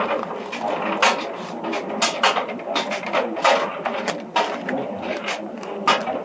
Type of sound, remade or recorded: recorded